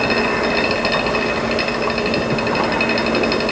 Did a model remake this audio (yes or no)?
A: no